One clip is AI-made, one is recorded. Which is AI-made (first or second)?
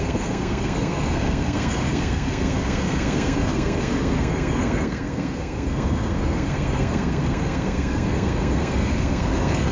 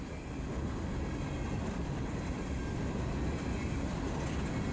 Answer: first